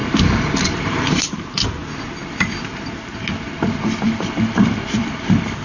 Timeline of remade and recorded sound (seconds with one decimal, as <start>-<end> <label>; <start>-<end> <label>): 0.0-0.8 recorded; 0.8-1.8 remade; 1.8-4.2 recorded; 4.2-5.6 remade